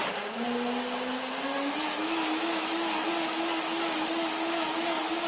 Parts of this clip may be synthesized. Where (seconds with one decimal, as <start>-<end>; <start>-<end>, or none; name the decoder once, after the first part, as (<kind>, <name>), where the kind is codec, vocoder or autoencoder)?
2.0-3.1 (autoencoder, DAC-VAE)